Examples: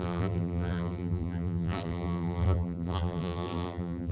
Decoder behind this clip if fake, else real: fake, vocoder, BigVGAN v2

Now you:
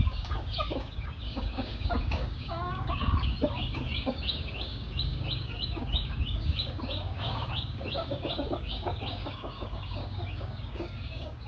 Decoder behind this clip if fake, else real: fake, codec, DAC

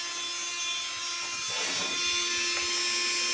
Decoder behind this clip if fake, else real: real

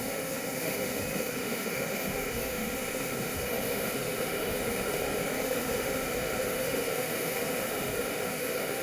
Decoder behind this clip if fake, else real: fake, autoencoder, DAC-VAE